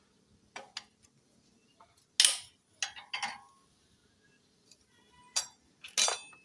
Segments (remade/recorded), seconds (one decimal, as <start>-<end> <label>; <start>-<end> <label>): 0.0-6.4 recorded